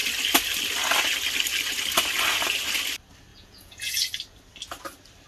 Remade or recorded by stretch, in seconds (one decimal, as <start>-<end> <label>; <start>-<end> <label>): 0.0-3.3 recorded; 3.3-3.9 remade; 3.9-5.3 recorded